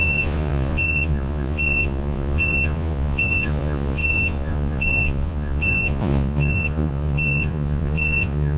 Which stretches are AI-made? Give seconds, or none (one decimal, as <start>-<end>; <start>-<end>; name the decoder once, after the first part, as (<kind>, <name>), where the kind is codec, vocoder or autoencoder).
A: 0.0-8.6 (vocoder, Vocos)